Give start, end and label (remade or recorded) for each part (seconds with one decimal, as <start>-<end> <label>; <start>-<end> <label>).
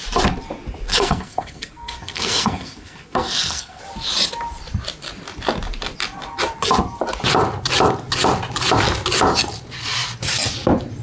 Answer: 0.0-0.9 recorded; 0.9-3.8 remade; 3.8-11.0 recorded